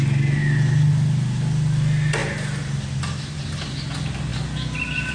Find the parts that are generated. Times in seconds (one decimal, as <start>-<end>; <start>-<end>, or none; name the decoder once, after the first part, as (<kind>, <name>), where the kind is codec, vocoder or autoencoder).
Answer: none